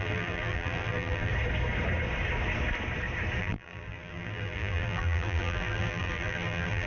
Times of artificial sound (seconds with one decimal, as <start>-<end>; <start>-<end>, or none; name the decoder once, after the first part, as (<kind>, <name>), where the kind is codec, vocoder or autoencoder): 0.0-1.3 (vocoder, BigVGAN v2); 3.4-6.9